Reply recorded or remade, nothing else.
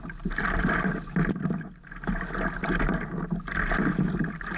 recorded